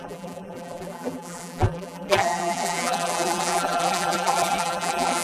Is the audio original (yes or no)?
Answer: no